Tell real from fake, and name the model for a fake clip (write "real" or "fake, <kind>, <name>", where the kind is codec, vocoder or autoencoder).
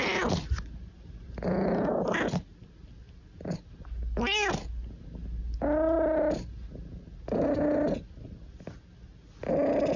real